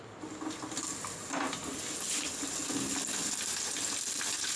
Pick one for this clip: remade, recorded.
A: recorded